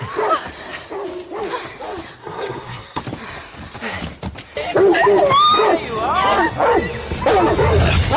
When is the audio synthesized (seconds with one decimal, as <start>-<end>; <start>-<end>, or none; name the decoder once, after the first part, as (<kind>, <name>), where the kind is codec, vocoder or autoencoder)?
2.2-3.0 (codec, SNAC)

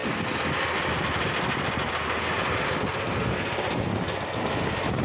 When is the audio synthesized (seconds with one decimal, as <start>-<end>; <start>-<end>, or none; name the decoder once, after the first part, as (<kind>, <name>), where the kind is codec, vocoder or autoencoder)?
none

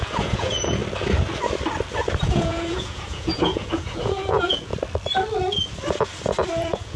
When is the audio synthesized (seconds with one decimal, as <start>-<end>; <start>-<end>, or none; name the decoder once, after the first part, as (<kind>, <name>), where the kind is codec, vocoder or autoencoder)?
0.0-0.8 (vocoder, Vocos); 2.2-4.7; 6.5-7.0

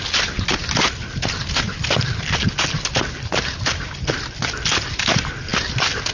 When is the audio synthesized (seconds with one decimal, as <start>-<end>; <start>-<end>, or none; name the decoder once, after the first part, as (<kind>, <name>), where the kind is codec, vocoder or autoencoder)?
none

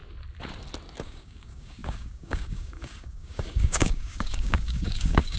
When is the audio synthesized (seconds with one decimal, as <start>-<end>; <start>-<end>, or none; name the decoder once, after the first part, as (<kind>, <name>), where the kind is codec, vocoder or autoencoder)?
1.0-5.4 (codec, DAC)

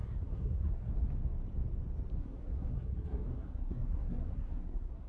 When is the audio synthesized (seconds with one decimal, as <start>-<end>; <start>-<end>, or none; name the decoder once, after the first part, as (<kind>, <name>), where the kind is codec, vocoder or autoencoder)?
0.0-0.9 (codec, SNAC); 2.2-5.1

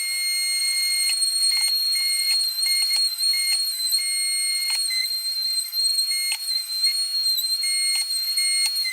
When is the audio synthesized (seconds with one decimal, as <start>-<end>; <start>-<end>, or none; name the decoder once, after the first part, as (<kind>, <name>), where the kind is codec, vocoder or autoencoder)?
0.6-4.0 (vocoder, BigVGAN v2); 4.5-5.1

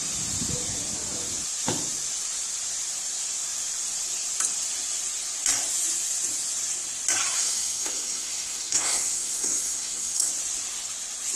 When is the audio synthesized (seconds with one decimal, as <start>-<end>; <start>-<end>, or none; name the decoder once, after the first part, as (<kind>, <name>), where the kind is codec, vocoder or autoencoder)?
7.4-10.3 (codec, SNAC)